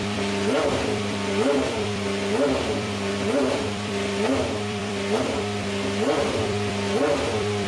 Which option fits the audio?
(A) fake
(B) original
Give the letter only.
A